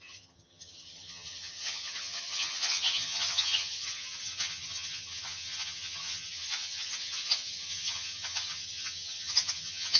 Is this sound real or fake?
fake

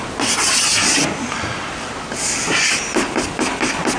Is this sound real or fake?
real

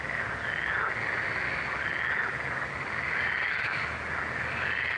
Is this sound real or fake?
real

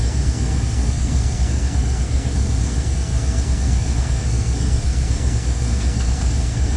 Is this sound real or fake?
fake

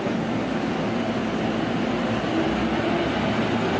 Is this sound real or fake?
real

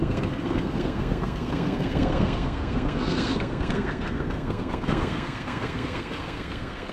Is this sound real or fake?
fake